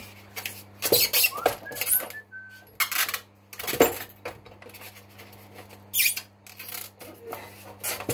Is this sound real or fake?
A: real